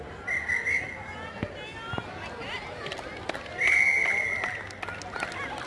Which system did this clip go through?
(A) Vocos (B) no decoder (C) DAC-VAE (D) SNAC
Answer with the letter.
B